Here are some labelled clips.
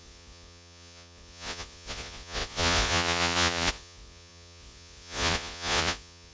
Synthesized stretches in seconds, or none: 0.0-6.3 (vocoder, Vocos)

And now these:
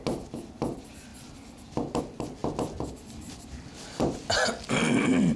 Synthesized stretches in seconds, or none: 1.1-2.0 (vocoder, BigVGAN v2); 2.4-4.1

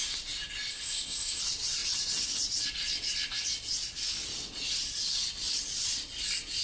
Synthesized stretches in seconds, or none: 0.7-1.4 (codec, SNAC)

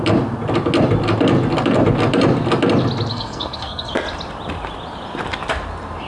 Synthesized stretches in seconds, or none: 3.1-3.9 (codec, SNAC)

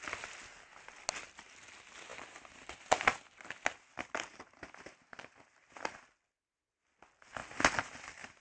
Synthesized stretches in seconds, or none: none

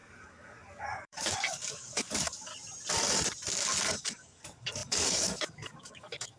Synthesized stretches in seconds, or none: 0.0-2.5 (codec, DAC); 3.8-6.4

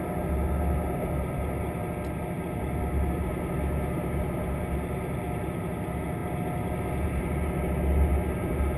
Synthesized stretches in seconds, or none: none